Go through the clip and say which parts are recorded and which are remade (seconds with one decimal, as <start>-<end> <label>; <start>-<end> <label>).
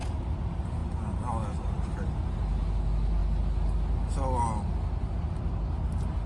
0.0-0.8 recorded; 0.8-2.1 remade; 2.1-6.3 recorded